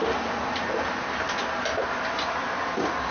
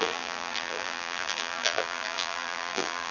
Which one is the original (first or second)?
first